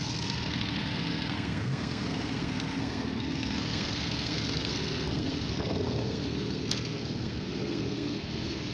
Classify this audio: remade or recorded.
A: remade